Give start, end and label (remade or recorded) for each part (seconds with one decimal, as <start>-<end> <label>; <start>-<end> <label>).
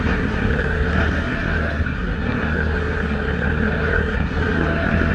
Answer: 0.0-5.1 remade